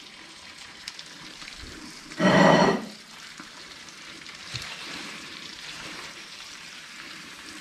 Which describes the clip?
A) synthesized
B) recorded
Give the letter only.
A